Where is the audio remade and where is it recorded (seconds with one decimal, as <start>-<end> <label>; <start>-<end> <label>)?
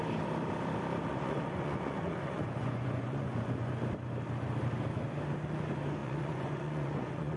0.0-1.1 recorded; 1.1-3.7 remade; 3.7-6.0 recorded; 6.0-7.4 remade